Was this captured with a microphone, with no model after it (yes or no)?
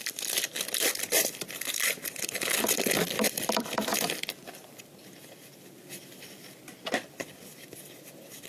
no